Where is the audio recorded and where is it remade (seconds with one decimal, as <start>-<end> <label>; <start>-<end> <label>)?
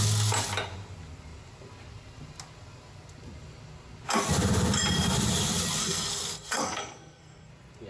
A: 0.0-5.8 recorded; 5.8-7.5 remade; 7.5-7.9 recorded